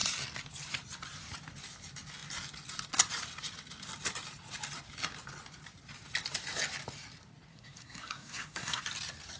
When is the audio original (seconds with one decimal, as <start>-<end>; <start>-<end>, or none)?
0.0-7.5; 8.8-9.4